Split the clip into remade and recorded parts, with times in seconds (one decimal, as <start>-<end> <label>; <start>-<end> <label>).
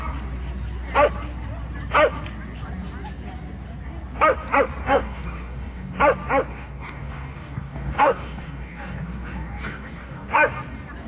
0.0-4.8 recorded; 4.8-6.0 remade; 6.0-6.5 recorded; 6.5-10.3 remade; 10.3-11.1 recorded